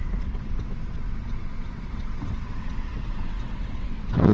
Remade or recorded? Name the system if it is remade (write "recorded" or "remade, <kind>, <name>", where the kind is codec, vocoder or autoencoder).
remade, vocoder, WaveNeXt